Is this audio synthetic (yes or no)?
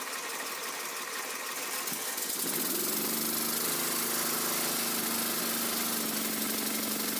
no